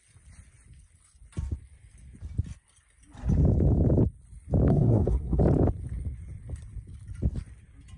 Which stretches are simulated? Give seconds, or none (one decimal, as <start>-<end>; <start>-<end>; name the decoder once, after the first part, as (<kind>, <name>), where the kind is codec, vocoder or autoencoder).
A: 4.7-5.4 (codec, SNAC)